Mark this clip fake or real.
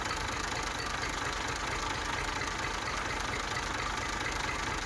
real